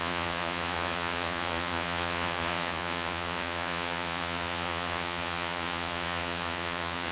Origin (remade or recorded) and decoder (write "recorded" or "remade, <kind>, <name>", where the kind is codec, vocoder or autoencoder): remade, vocoder, Vocos